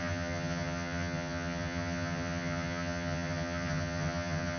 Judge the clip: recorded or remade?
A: remade